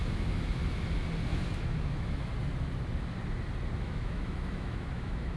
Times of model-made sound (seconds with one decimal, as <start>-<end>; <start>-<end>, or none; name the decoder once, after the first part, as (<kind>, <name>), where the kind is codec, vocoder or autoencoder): 0.0-0.6 (autoencoder, DAC-VAE); 1.3-2.3; 3.8-5.4